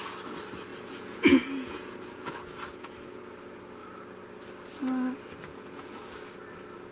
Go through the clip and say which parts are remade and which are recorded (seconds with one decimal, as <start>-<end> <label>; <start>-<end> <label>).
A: 0.0-0.7 recorded; 0.7-2.3 remade; 2.3-2.7 recorded; 2.7-3.2 remade; 3.2-5.5 recorded; 5.5-6.0 remade; 6.0-6.9 recorded